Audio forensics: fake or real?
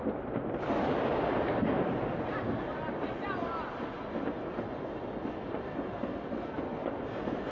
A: real